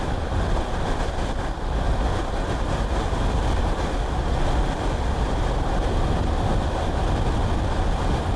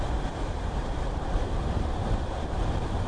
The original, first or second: first